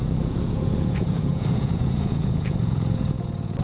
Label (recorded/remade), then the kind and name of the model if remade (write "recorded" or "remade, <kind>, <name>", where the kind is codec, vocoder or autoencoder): remade, vocoder, Vocos